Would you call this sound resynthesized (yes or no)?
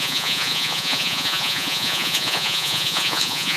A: yes